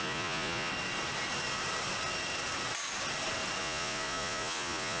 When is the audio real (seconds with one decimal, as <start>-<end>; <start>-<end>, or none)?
0.7-3.6